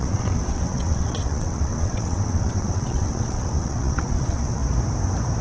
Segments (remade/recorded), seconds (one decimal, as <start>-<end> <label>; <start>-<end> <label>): 0.0-4.6 remade; 4.6-5.4 recorded